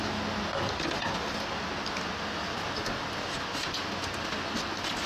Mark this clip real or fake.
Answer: real